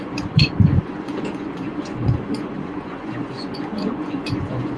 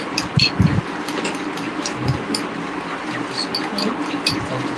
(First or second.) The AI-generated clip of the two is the first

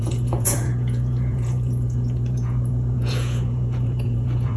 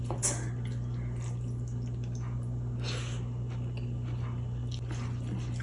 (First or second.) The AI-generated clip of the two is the first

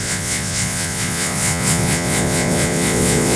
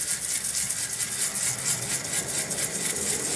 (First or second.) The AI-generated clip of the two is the first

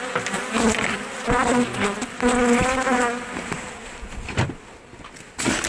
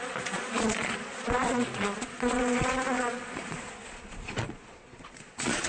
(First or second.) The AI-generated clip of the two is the second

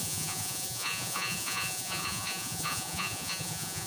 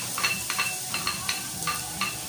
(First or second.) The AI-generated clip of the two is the first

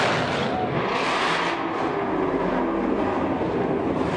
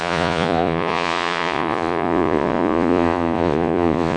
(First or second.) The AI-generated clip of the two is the second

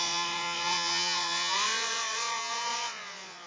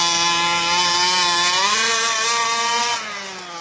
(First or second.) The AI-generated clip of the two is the first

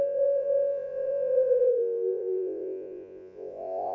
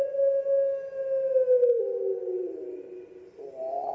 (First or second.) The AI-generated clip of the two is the first